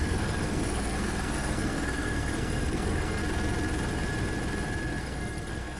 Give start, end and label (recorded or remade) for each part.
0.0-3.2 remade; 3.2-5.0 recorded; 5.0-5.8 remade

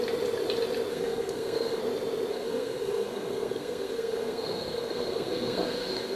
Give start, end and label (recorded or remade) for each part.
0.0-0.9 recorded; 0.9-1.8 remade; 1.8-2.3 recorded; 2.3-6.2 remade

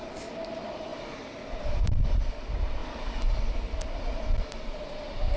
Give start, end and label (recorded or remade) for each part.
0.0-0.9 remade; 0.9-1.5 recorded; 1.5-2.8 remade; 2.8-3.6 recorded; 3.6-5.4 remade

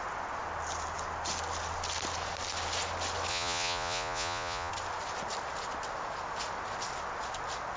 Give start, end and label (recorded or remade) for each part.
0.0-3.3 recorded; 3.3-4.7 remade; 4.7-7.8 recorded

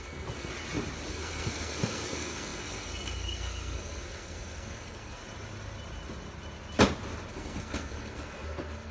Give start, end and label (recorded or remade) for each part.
0.0-0.5 remade; 0.5-1.1 recorded; 1.1-5.2 remade; 5.2-7.3 recorded; 7.3-8.9 remade

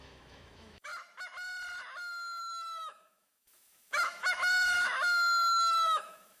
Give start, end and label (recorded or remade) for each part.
0.0-0.9 remade; 0.9-2.4 recorded; 2.4-6.4 remade

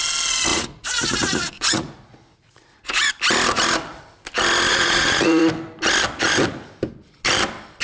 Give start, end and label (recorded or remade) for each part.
0.0-0.5 recorded; 0.5-3.1 remade; 3.1-4.7 recorded; 4.7-5.5 remade; 5.5-7.8 recorded